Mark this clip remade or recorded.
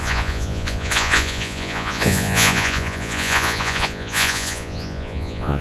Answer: remade